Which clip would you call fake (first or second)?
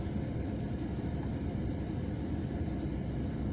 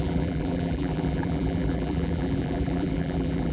second